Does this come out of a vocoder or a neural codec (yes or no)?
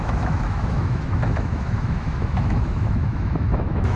yes